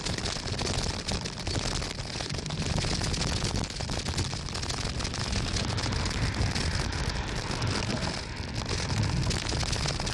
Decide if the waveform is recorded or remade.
recorded